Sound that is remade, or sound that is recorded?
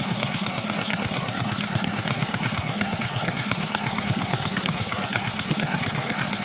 remade